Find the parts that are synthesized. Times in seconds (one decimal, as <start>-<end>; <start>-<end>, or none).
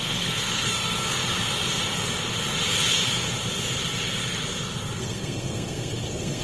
0.0-1.2; 5.0-6.4